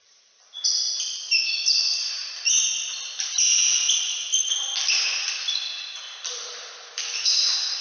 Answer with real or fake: real